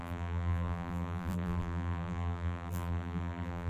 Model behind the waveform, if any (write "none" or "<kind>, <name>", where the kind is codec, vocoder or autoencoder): vocoder, BigVGAN v2